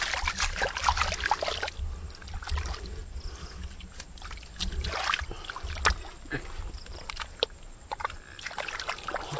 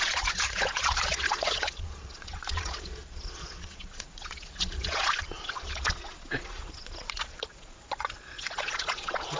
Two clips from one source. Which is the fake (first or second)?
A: second